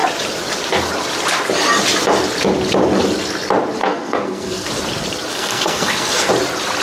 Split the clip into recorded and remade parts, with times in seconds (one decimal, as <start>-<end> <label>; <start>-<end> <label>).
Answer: 0.0-3.8 recorded; 3.8-4.7 remade; 4.7-5.3 recorded; 5.3-6.3 remade; 6.3-6.8 recorded